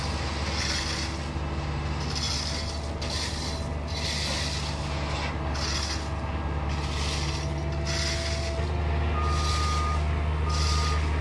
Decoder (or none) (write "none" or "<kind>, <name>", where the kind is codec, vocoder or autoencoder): none